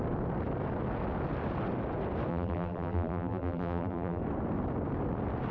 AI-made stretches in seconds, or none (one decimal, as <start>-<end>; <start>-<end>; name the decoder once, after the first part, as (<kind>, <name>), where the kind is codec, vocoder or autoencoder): 2.3-4.2 (vocoder, BigVGAN v2)